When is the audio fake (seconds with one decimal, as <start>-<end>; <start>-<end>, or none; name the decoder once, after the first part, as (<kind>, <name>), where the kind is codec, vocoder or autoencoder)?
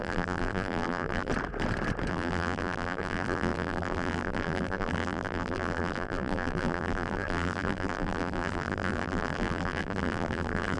0.0-1.3 (vocoder, BigVGAN v2); 2.1-10.8